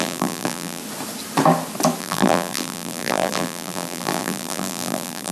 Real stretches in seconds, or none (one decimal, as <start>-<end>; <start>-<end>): 0.8-2.0